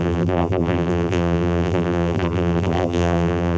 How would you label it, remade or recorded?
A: remade